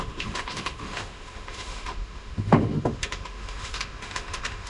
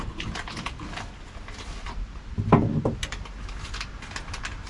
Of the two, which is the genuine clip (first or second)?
second